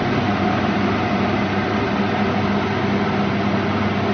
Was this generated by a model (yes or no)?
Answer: no